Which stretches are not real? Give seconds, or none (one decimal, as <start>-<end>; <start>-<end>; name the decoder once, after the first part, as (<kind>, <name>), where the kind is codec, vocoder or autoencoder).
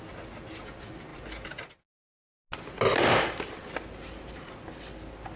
none